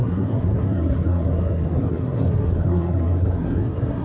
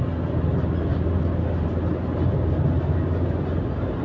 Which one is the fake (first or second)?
first